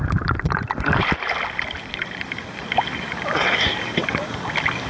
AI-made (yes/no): no